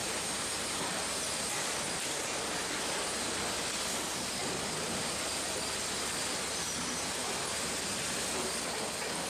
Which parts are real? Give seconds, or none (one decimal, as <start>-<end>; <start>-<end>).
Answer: 1.2-9.3

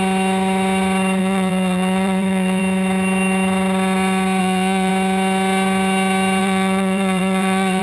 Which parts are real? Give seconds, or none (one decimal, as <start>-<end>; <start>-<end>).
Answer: 0.0-1.2; 2.6-4.4; 4.9-6.4

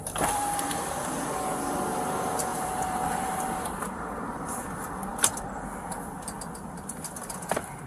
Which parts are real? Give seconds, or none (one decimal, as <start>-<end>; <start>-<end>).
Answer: 0.0-2.5; 4.5-7.9